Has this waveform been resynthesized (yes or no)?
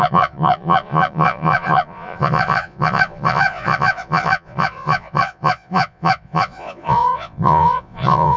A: yes